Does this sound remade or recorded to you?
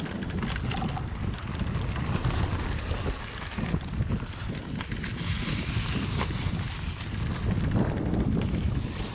recorded